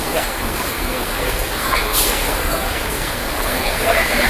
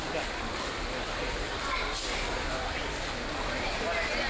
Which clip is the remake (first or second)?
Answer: first